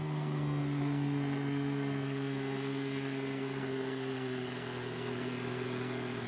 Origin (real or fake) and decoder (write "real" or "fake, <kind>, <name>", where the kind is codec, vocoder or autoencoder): fake, codec, SNAC